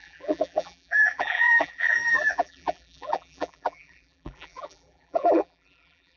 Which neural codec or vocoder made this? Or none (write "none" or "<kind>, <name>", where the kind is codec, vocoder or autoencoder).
vocoder, BigVGAN v2